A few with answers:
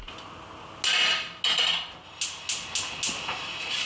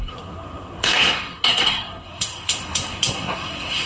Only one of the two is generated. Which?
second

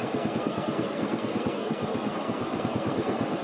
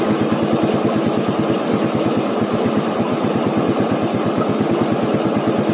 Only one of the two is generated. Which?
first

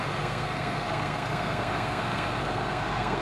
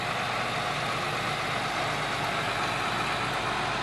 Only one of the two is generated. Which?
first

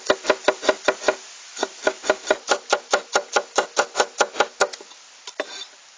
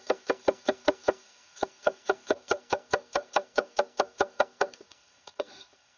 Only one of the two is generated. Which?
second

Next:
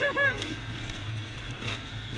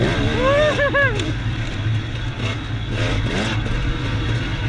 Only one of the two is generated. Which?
first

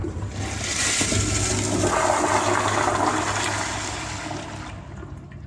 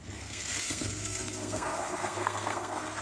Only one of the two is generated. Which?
second